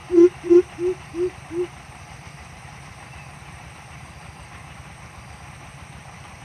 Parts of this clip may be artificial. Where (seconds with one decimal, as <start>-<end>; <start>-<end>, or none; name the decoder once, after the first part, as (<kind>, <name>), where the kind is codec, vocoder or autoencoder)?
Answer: 0.0-3.8 (vocoder, BigVGAN v2); 5.7-6.4